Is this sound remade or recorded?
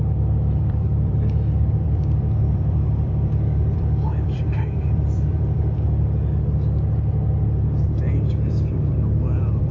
remade